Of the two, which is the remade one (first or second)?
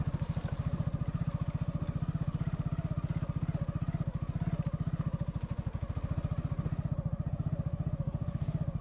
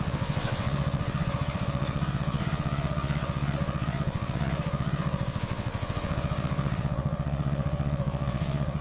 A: second